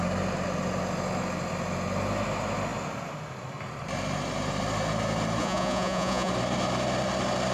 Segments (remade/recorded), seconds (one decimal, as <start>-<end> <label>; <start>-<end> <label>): 0.0-5.4 recorded; 5.4-6.3 remade; 6.3-7.5 recorded